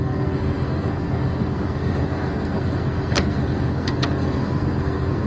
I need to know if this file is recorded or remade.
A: remade